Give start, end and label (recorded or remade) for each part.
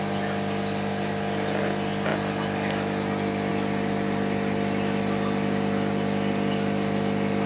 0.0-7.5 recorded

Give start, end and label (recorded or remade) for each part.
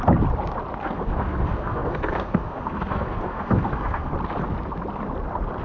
0.0-0.8 recorded; 0.8-4.1 remade; 4.1-5.6 recorded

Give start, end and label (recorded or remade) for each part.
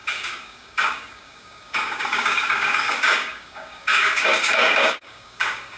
0.0-5.8 remade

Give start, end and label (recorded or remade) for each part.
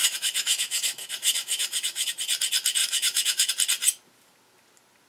0.0-2.1 remade; 2.1-2.8 recorded; 2.8-3.5 remade; 3.5-5.1 recorded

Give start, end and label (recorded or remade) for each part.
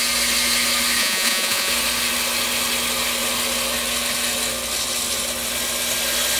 0.0-1.0 recorded; 1.0-1.7 remade; 1.7-6.4 recorded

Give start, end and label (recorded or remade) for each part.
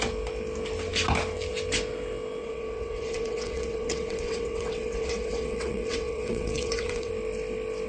0.0-2.4 recorded; 2.4-7.1 remade; 7.1-7.9 recorded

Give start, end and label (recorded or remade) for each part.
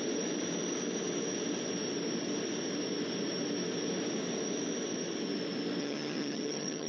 0.0-5.8 recorded; 5.8-6.9 remade